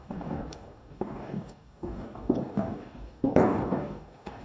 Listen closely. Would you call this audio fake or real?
fake